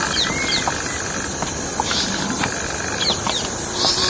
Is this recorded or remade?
remade